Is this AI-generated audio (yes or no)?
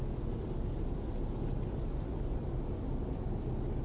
no